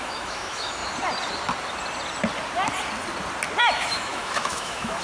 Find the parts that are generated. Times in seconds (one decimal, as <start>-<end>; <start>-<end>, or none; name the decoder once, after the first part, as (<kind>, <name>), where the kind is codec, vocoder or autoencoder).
0.0-0.8 (autoencoder, DAC-VAE); 3.6-5.0